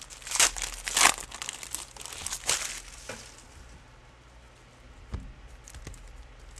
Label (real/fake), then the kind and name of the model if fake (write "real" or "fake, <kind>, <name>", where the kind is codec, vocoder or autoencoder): real